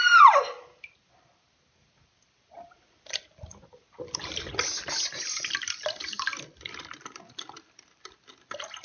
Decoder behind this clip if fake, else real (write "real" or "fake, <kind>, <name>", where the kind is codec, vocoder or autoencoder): fake, vocoder, BigVGAN v2